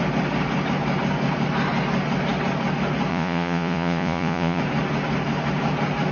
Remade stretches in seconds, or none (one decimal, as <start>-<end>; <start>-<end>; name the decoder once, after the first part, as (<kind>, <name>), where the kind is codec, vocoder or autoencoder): 3.1-4.6 (vocoder, Vocos)